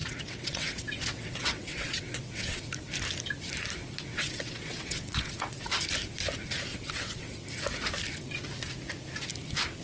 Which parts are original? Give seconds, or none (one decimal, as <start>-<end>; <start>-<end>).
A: 2.6-4.1; 5.6-6.7; 7.4-9.8